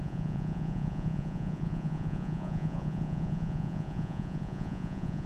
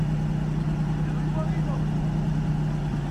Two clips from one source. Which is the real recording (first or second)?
second